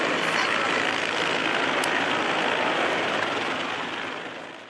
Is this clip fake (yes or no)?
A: no